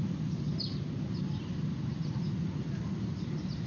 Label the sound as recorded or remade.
recorded